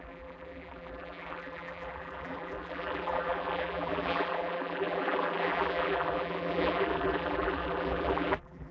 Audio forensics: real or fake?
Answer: fake